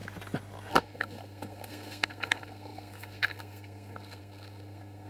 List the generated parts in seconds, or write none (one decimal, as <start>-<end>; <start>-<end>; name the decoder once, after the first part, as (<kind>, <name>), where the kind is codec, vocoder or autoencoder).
0.7-5.1 (codec, SNAC)

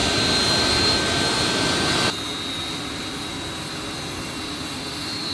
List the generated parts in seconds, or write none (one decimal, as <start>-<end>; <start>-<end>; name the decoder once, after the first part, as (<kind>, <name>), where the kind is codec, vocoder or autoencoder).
none

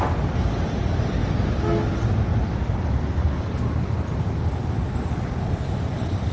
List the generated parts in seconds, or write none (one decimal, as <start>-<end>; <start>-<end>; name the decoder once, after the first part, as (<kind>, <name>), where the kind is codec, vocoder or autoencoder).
none

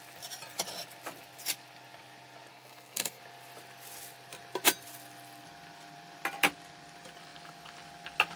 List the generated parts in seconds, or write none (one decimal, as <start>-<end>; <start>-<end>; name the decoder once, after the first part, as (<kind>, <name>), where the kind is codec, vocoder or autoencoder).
2.5-3.2 (codec, SNAC)

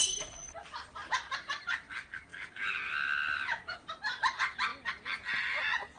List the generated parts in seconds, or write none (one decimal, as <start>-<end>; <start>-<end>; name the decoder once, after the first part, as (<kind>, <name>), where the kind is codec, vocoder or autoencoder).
none

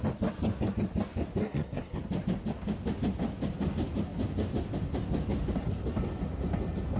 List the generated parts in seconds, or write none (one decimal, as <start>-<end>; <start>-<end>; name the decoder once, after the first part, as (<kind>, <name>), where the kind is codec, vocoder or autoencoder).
1.4-2.0 (codec, SNAC)

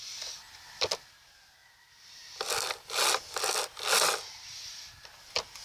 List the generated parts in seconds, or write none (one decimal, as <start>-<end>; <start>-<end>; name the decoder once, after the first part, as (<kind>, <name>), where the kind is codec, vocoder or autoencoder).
none

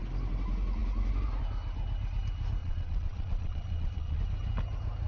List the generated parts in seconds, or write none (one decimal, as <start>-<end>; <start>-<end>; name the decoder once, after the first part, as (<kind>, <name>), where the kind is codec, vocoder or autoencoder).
2.6-4.2 (vocoder, Vocos)